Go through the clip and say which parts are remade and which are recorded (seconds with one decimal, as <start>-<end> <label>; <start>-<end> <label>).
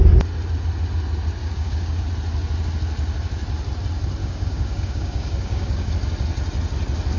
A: 0.0-1.4 recorded; 1.4-2.0 remade; 2.0-4.2 recorded; 4.2-5.9 remade; 5.9-7.2 recorded